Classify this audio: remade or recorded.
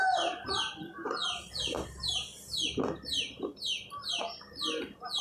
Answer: recorded